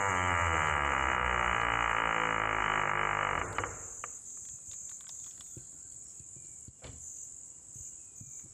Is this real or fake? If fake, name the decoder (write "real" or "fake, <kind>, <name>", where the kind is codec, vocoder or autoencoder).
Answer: real